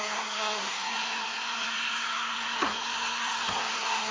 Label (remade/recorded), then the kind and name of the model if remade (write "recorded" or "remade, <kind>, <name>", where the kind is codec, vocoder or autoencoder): remade, codec, SNAC